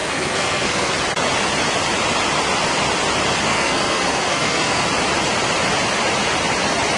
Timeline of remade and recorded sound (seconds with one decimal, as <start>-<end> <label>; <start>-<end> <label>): 0.0-0.9 remade; 0.9-3.5 recorded; 3.5-4.8 remade; 4.8-7.0 recorded